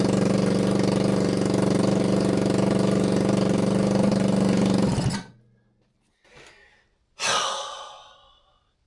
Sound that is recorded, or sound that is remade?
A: recorded